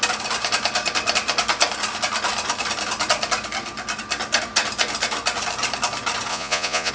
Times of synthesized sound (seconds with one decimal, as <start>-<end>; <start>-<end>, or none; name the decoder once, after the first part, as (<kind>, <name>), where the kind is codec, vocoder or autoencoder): 6.3-6.9 (vocoder, Vocos)